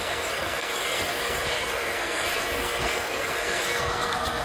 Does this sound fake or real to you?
fake